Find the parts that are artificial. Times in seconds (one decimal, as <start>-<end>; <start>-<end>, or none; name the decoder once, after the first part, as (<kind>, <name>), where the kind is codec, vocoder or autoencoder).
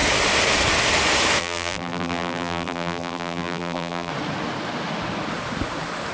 1.4-4.1 (vocoder, BigVGAN v2)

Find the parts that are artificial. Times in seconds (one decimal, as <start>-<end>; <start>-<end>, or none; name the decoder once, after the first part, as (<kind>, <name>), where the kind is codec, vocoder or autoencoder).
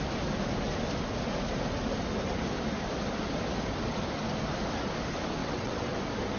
5.4-5.9 (vocoder, WaveNeXt)